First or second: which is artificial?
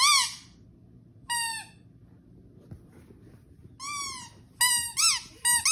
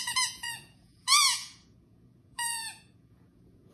second